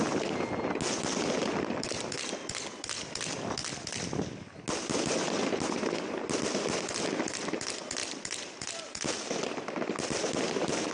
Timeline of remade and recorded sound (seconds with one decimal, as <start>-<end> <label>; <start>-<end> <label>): 0.0-8.0 recorded; 8.0-9.7 remade; 9.7-10.9 recorded